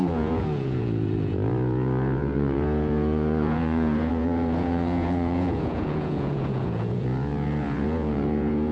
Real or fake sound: fake